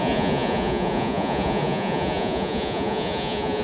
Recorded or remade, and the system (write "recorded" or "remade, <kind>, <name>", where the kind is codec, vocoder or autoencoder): remade, vocoder, Vocos